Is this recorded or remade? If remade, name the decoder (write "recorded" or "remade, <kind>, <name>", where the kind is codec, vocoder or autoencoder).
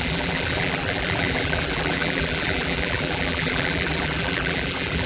remade, vocoder, BigVGAN v2